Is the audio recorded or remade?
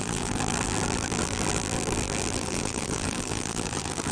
remade